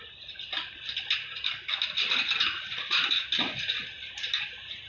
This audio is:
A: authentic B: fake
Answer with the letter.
A